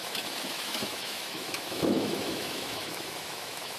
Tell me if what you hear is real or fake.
fake